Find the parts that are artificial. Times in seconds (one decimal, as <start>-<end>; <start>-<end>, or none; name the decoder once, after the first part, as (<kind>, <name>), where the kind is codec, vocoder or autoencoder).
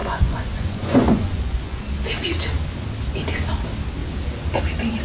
0.0-1.8 (vocoder, Vocos)